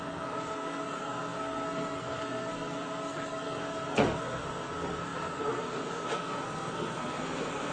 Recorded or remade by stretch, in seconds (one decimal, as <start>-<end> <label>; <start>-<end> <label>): 0.0-7.7 remade